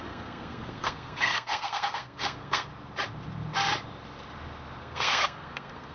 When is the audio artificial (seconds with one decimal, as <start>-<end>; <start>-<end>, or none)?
0.0-2.7; 4.8-5.9